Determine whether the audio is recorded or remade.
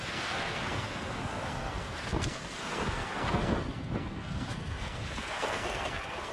remade